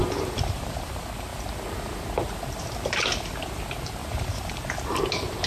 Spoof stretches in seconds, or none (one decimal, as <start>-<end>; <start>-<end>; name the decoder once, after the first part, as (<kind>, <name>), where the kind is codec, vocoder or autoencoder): 0.0-0.9 (vocoder, BigVGAN v2); 2.8-3.4; 4.0-5.0